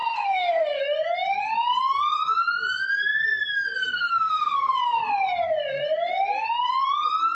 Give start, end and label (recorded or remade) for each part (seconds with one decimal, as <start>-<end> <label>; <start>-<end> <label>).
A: 0.0-0.8 remade; 0.8-3.8 recorded; 3.8-5.0 remade; 5.0-7.3 recorded